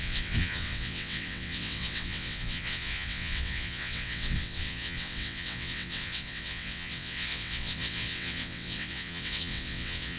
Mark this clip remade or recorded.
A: remade